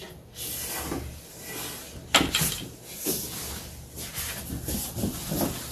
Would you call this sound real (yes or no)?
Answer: yes